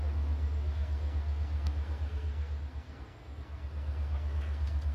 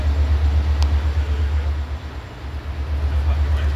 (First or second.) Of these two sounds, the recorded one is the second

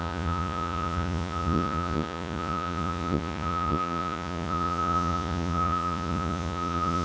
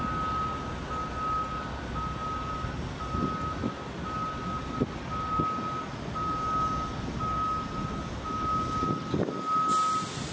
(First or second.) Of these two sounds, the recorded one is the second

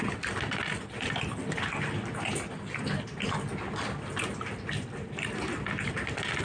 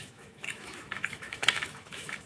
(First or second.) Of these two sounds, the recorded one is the first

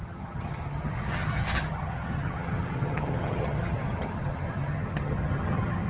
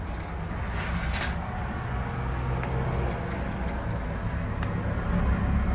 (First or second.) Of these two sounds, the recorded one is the second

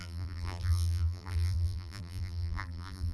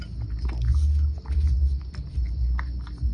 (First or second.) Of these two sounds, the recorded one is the second